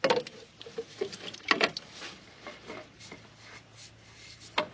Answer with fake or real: real